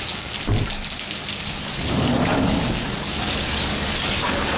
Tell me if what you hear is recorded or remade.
remade